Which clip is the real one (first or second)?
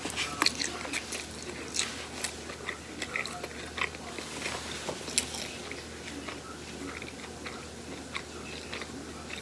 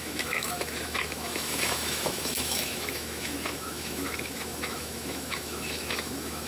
first